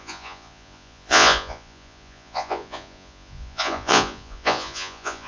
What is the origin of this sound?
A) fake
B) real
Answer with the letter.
A